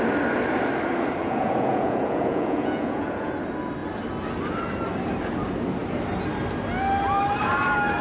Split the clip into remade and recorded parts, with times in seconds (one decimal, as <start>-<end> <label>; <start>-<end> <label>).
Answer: 0.0-1.2 recorded; 1.2-3.3 remade; 3.3-8.0 recorded